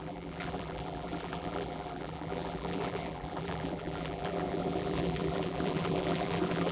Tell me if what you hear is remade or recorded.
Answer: remade